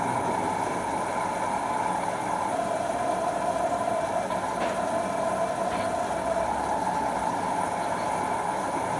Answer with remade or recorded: recorded